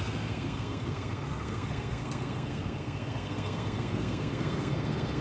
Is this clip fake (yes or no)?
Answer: yes